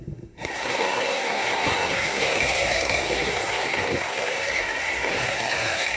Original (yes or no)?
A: no